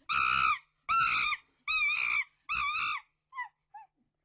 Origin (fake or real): real